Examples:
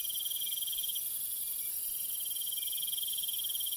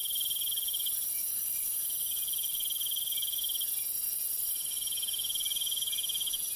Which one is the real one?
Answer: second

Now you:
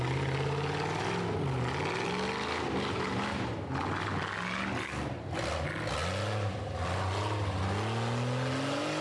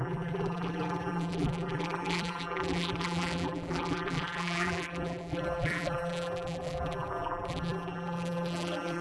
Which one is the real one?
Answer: first